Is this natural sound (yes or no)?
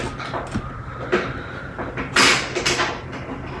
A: yes